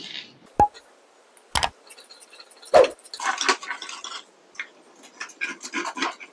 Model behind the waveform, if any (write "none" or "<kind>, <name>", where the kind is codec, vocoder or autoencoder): none